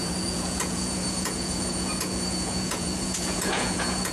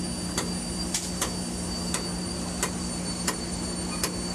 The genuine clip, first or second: second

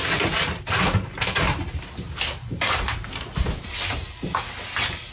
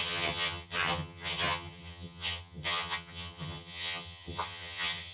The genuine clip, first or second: first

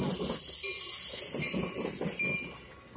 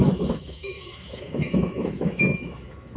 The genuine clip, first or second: first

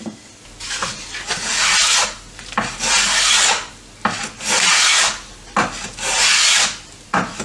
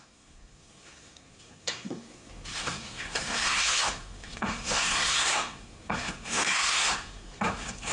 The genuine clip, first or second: first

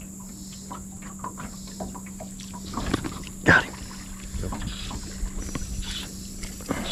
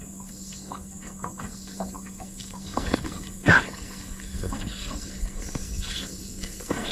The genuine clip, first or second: first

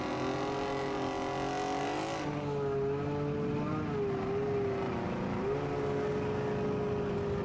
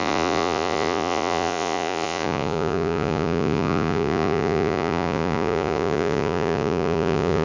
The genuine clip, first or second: first